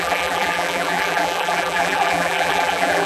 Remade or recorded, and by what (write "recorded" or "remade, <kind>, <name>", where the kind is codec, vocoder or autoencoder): remade, vocoder, BigVGAN v2